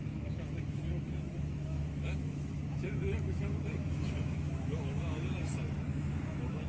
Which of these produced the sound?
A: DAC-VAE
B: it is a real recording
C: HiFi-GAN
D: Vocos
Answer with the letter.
A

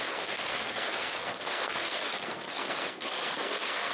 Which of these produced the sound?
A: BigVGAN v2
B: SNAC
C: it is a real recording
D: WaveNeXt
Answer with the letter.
B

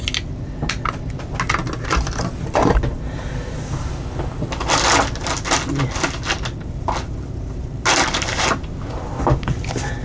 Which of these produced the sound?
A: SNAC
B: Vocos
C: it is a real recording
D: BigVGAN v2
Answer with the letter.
C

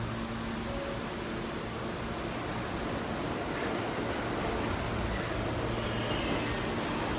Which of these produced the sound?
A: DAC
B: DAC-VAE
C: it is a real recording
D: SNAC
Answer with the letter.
C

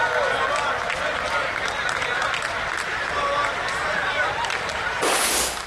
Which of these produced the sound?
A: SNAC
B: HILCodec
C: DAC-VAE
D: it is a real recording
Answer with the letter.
D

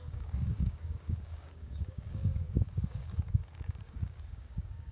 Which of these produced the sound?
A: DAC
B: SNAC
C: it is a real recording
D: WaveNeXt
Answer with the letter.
A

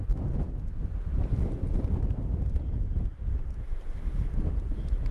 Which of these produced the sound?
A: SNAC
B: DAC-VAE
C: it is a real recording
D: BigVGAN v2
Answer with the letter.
C